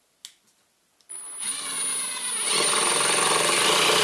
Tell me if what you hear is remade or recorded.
recorded